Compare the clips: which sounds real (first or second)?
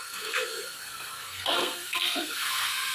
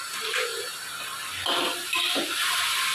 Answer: second